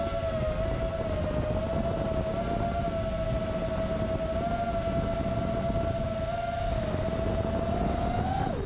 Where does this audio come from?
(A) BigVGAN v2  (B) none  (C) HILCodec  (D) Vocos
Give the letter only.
B